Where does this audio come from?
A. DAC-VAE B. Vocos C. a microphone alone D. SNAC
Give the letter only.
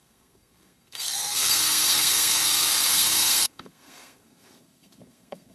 D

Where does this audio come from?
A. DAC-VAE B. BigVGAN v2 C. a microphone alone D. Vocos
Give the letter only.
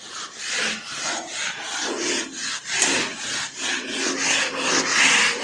C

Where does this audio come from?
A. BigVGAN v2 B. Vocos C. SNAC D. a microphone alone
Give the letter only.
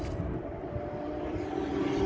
D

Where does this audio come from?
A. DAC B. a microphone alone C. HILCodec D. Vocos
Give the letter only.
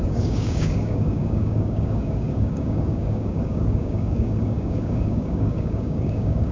A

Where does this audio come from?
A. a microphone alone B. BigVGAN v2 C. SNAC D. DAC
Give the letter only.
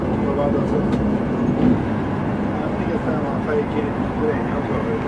A